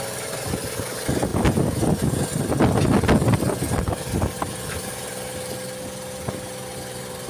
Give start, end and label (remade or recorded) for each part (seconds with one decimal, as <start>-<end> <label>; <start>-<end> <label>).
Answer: 0.0-7.3 recorded

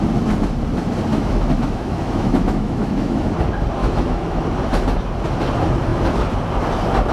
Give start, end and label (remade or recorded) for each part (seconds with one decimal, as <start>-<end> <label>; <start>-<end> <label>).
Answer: 0.0-1.1 recorded; 1.1-3.3 remade; 3.3-3.8 recorded; 3.8-4.4 remade; 4.4-7.1 recorded

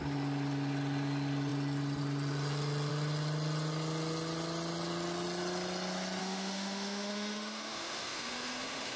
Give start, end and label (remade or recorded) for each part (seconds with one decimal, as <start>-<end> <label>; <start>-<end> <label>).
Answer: 0.0-6.2 recorded; 6.2-9.0 remade